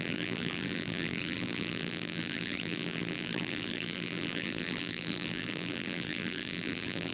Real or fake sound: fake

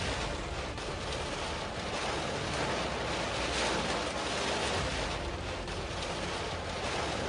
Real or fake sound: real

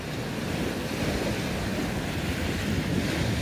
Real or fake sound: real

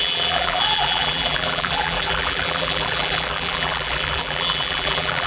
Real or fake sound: fake